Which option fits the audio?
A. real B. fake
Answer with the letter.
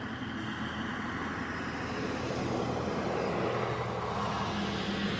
A